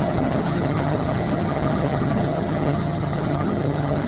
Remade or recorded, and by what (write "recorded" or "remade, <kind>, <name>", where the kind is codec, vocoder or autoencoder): remade, vocoder, HiFi-GAN